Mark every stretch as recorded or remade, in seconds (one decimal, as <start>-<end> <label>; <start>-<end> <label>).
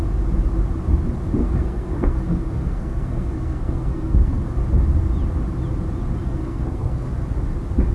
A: 0.0-1.4 recorded; 1.4-4.5 remade; 4.5-6.2 recorded; 6.2-7.1 remade; 7.1-7.9 recorded